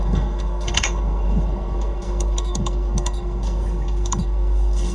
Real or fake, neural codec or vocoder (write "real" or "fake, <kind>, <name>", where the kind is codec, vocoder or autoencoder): fake, codec, SNAC